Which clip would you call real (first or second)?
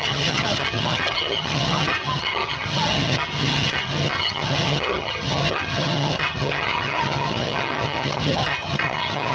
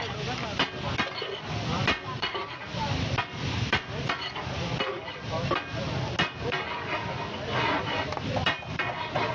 second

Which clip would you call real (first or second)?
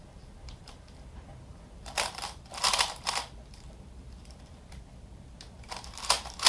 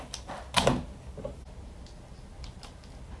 second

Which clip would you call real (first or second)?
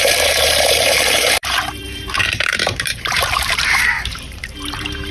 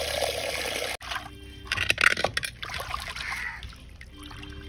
second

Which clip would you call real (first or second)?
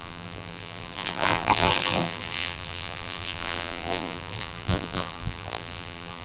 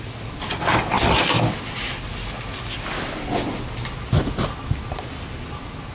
second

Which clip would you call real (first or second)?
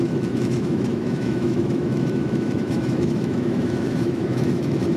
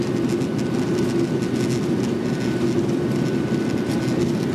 second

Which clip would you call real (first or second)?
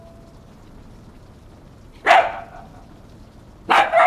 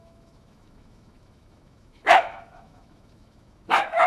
first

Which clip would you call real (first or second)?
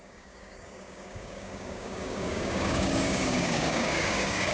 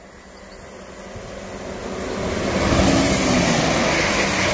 second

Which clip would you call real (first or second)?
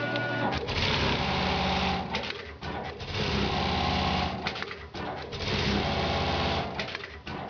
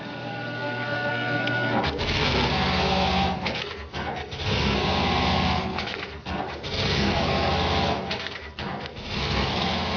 first